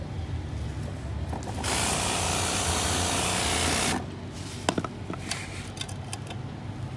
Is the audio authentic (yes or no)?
yes